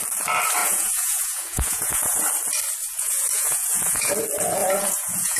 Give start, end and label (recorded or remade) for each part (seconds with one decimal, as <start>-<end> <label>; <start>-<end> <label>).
0.0-0.6 recorded; 0.6-2.2 remade; 2.2-2.8 recorded; 2.8-4.1 remade; 4.1-4.6 recorded; 4.6-5.4 remade